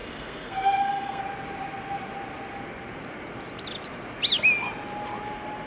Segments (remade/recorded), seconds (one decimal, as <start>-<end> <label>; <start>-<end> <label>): 0.0-1.2 remade; 1.2-5.7 recorded